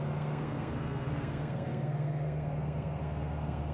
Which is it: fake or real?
fake